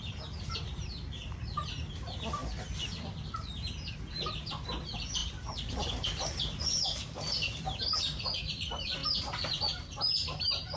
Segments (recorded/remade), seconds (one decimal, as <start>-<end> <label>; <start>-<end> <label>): 0.0-9.0 remade; 9.0-10.8 recorded